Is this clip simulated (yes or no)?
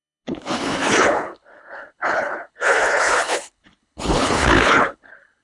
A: yes